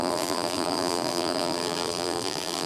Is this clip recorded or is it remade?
remade